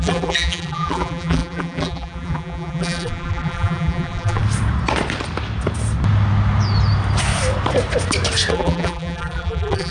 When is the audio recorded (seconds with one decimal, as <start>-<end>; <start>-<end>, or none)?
4.4-8.5